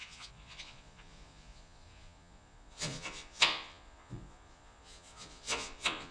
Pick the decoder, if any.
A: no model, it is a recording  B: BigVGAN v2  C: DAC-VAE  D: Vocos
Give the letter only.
D